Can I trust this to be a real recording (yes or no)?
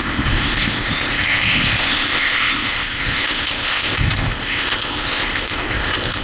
no